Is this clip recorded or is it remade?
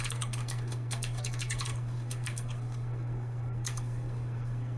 remade